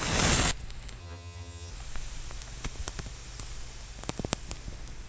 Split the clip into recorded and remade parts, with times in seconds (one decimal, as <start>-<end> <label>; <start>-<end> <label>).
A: 0.0-1.0 recorded; 1.0-1.7 remade; 1.7-5.1 recorded